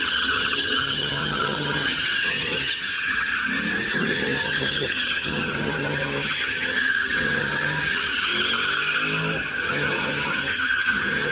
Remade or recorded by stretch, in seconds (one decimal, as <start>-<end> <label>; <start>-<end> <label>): 0.0-3.3 remade; 3.3-3.9 recorded; 3.9-8.3 remade; 8.3-9.6 recorded; 9.6-11.3 remade